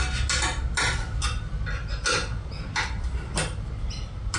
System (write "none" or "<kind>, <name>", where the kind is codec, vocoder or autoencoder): none